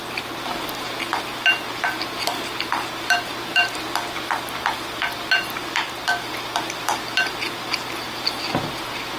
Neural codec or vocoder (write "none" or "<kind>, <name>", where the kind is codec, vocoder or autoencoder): none